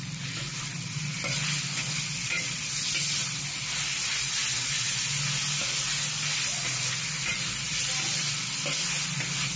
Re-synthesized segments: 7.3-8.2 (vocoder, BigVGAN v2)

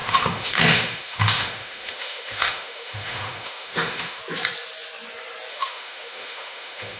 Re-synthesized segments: 0.0-4.2 (autoencoder, DAC-VAE); 5.5-7.0

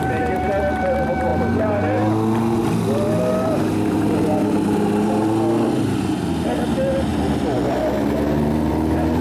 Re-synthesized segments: none

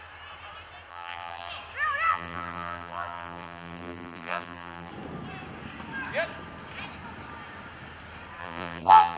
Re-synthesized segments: 0.9-1.5 (vocoder, BigVGAN v2); 2.1-4.9; 8.4-9.2